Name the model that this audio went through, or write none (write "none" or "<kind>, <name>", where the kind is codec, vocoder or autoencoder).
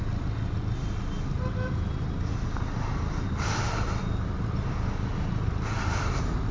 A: none